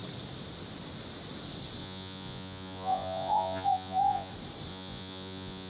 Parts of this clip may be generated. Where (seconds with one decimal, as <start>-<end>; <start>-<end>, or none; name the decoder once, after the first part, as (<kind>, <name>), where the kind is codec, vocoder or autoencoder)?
1.8-4.3 (vocoder, Vocos); 4.7-5.7

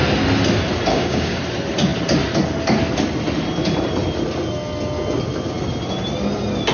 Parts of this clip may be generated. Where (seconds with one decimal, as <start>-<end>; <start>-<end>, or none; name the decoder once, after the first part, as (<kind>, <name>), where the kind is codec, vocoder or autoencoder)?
0.9-1.4 (codec, DAC)